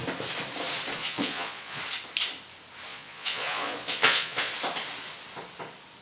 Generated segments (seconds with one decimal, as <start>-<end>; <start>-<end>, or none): 1.0-1.8; 2.9-4.5